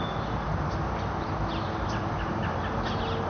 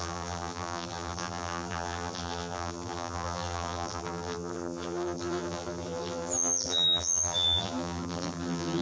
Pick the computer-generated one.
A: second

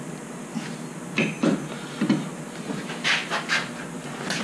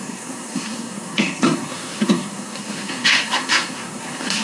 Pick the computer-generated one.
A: second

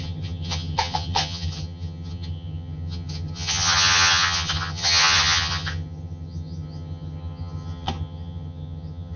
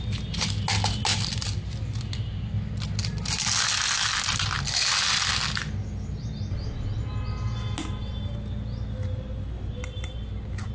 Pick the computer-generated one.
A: first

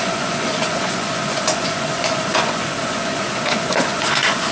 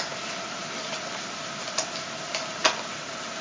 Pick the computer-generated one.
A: first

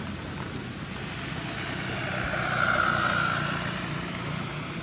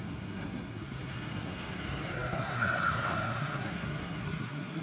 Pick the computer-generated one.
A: second